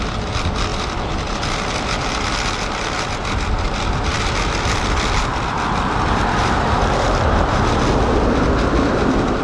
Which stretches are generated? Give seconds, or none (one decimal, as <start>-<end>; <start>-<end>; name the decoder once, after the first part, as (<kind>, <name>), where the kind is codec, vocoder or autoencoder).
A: 6.4-7.7 (vocoder, BigVGAN v2)

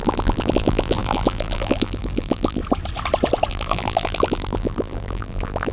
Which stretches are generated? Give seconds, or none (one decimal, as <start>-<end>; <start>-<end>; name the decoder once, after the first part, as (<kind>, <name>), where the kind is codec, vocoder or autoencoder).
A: 0.0-2.6 (vocoder, BigVGAN v2); 3.5-5.7

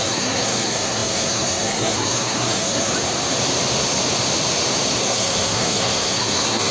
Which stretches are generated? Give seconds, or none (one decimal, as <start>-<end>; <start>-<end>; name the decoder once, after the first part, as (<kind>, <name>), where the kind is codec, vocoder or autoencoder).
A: 0.0-2.9 (codec, SNAC); 5.0-6.7

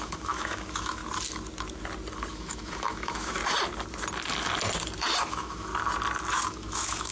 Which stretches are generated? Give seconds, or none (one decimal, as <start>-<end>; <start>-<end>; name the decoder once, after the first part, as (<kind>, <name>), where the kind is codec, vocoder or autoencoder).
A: 0.0-1.0 (autoencoder, DAC-VAE); 2.3-3.4; 5.2-5.7; 6.3-7.1

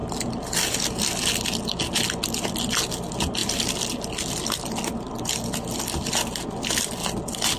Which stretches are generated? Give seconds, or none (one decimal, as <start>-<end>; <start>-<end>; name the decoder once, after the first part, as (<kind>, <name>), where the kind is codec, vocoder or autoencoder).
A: none